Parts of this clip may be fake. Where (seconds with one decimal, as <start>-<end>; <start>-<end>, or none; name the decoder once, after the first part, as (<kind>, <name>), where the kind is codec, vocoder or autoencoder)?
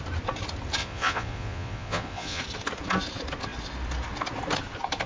0.8-2.4 (vocoder, Vocos)